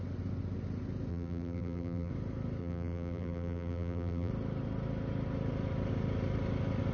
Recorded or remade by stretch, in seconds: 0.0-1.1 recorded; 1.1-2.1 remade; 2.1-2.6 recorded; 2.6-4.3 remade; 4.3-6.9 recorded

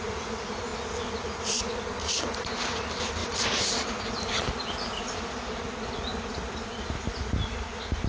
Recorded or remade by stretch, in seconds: 0.0-8.1 recorded

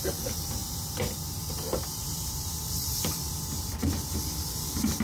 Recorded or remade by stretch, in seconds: 0.0-3.7 remade; 3.7-4.5 recorded; 4.5-5.0 remade

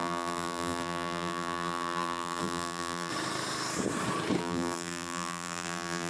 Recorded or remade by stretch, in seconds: 0.0-3.1 remade; 3.1-4.4 recorded; 4.4-6.1 remade

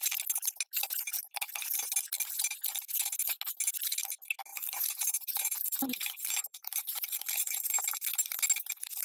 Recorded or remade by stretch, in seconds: 0.0-4.5 recorded; 4.5-7.8 remade; 7.8-9.0 recorded